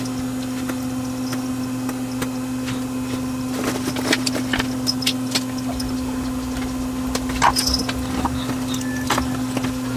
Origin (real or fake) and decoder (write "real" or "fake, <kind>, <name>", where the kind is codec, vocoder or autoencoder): real